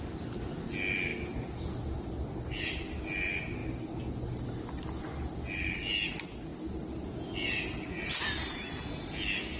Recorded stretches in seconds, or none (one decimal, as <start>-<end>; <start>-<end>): 0.0-9.6